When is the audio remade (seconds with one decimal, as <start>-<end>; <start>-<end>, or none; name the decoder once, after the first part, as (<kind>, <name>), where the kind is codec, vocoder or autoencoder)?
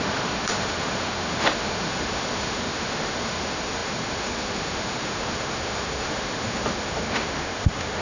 0.0-8.0 (autoencoder, DAC-VAE)